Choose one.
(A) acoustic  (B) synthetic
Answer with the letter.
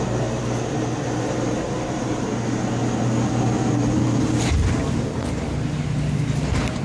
A